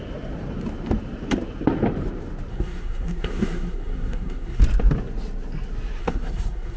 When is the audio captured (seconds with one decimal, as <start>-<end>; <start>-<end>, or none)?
0.0-2.5; 4.6-6.0